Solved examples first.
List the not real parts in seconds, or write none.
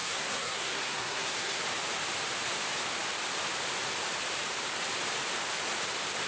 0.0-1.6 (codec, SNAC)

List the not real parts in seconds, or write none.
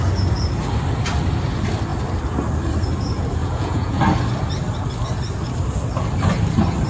3.4-4.0 (vocoder, Vocos)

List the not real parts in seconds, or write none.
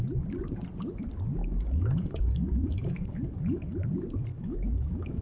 1.4-3.8 (codec, DAC); 4.3-5.2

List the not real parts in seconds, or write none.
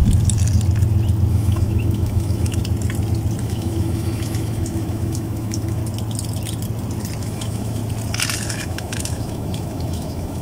1.3-2.6 (autoencoder, DAC-VAE); 3.4-5.8; 7.2-7.8; 8.5-10.4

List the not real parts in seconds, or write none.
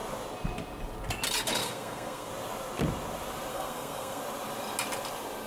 1.6-2.3 (codec, SNAC); 3.5-4.2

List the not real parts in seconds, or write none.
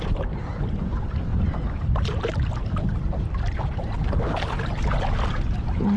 none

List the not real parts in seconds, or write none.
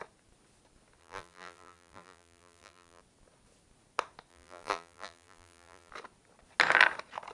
1.0-3.0 (vocoder, BigVGAN v2); 4.3-5.9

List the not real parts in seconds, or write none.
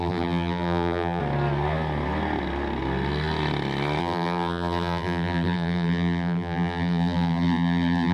0.0-1.2 (vocoder, BigVGAN v2); 4.0-8.1